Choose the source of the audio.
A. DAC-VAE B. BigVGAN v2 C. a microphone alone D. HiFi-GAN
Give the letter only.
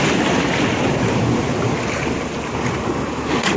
C